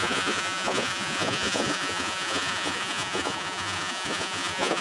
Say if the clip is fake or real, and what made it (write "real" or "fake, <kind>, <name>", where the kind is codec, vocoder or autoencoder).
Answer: fake, vocoder, Vocos